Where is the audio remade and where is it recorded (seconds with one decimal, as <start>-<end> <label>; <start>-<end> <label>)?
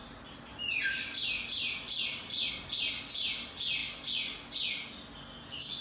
0.0-5.8 recorded